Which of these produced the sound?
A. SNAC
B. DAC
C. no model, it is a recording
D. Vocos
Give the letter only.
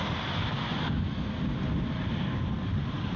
C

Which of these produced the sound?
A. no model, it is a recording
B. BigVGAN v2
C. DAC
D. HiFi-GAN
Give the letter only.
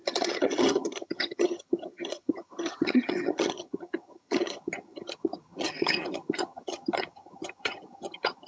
D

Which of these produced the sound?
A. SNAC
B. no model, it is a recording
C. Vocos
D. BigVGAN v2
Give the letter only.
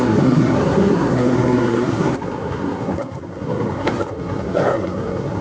A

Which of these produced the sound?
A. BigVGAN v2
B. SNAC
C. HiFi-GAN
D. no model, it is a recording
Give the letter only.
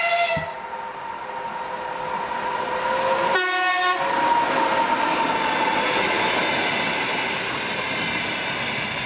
D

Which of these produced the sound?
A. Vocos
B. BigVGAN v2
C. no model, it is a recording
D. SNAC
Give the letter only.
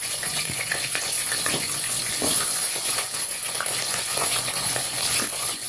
A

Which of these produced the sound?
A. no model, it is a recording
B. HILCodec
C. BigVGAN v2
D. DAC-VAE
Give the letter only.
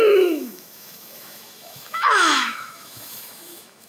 D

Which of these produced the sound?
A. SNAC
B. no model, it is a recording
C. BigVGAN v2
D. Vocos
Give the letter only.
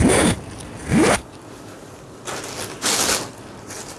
B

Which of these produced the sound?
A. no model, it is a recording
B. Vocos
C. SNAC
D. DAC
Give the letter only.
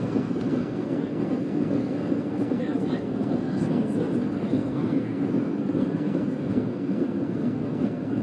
C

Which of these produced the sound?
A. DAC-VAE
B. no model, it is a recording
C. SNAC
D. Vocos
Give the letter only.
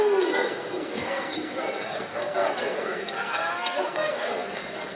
C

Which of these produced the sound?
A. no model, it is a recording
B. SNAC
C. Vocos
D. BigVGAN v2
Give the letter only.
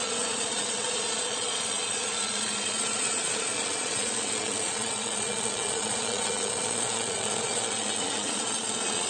C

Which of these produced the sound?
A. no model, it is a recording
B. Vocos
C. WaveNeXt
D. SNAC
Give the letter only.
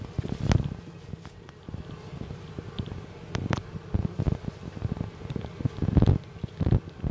A